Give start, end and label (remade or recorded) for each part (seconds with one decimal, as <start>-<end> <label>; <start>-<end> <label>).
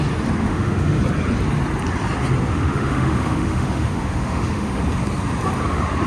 0.0-0.4 recorded; 0.4-1.0 remade; 1.0-2.5 recorded; 2.5-4.8 remade; 4.8-6.1 recorded